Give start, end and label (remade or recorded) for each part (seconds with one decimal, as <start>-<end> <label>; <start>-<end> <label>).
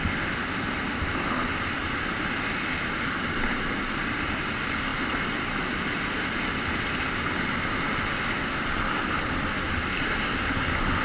0.0-11.0 recorded